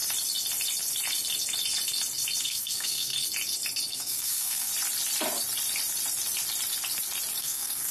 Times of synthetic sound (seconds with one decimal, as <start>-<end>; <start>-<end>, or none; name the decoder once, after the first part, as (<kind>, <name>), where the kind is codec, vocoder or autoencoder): 2.4-3.1 (codec, SNAC); 3.9-4.7; 7.4-7.9

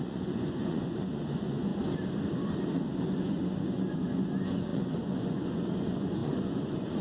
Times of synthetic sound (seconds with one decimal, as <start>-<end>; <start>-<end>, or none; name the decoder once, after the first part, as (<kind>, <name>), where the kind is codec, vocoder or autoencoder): 0.0-1.7 (vocoder, Vocos); 3.0-7.0

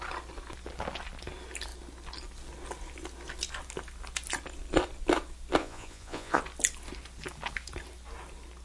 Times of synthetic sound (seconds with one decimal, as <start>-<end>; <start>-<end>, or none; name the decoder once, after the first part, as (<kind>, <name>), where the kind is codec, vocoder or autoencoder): 5.6-6.4 (vocoder, Vocos)

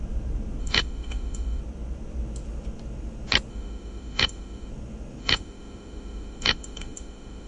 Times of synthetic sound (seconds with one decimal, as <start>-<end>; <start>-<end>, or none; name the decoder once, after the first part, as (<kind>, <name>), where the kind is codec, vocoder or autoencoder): 0.6-1.6 (autoencoder, DAC-VAE); 3.5-4.7; 5.2-7.5

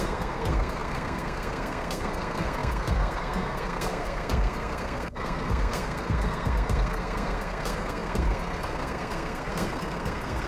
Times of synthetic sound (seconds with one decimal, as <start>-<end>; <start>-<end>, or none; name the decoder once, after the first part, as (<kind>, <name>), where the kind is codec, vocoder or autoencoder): 0.0-10.5 (codec, SNAC)

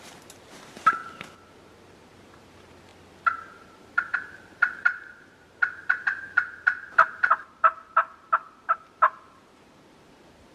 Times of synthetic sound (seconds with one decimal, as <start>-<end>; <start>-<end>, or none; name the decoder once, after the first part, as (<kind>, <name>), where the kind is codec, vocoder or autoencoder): 0.0-1.0 (vocoder, BigVGAN v2); 1.5-2.9; 3.5-10.5

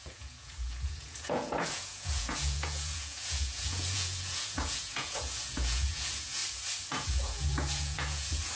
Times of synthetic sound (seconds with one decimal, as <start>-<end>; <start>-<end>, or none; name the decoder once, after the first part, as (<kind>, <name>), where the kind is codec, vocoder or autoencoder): 0.0-6.4 (vocoder, Vocos); 6.9-8.6